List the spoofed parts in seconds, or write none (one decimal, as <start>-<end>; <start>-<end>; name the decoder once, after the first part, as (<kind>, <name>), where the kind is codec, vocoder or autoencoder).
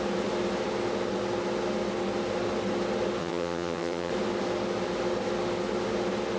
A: 3.2-4.1 (vocoder, HiFi-GAN)